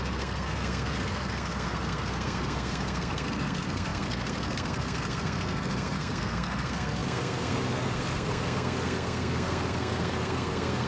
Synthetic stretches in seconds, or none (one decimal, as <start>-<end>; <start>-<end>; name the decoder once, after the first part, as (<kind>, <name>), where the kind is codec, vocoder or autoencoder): 0.0-10.9 (codec, SNAC)